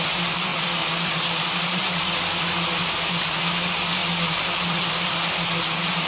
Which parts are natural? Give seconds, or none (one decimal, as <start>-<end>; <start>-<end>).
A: 0.0-4.0; 4.9-6.1